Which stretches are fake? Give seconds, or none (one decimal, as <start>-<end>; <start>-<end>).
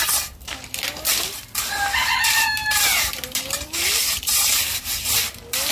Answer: 2.0-5.7